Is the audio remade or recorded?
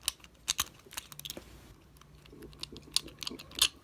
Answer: recorded